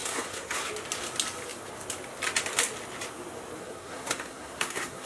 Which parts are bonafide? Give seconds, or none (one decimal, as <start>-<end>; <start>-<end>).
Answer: 0.7-3.6